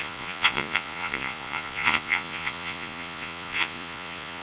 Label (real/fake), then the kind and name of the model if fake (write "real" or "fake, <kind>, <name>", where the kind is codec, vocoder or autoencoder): fake, vocoder, Vocos